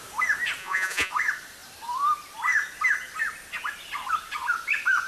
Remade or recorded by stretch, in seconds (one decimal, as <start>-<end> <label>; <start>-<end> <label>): 0.0-0.6 recorded; 0.6-1.1 remade; 1.1-5.1 recorded

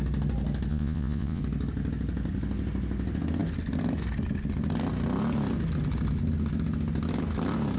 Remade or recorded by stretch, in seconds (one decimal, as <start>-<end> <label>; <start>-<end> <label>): 0.0-0.7 recorded; 0.7-1.4 remade; 1.4-7.8 recorded

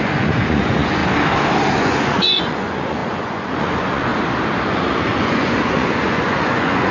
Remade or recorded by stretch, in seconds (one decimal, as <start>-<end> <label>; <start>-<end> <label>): 0.0-1.0 remade; 1.0-1.7 recorded; 1.7-4.1 remade; 4.1-4.7 recorded; 4.7-6.9 remade

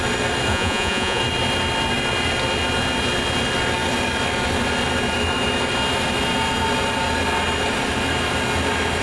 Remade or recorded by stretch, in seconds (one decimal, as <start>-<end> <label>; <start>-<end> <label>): 0.0-0.5 recorded; 0.5-1.2 remade; 1.2-9.0 recorded